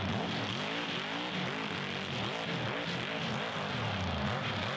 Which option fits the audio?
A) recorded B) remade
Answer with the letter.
A